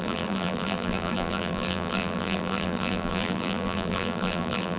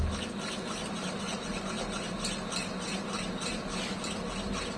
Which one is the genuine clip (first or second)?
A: second